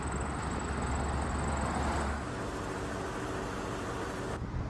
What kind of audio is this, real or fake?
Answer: real